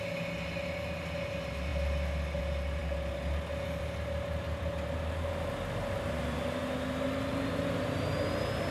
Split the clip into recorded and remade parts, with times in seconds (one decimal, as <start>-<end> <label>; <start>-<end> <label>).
0.0-8.7 recorded